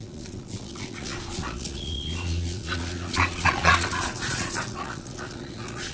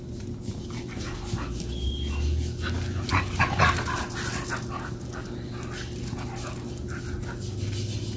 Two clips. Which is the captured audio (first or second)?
second